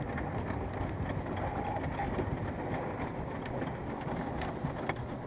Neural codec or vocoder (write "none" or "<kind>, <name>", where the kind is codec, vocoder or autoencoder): none